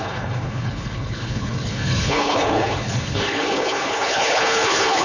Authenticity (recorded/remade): remade